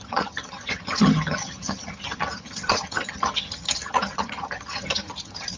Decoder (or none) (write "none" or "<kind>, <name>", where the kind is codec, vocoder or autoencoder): vocoder, HiFi-GAN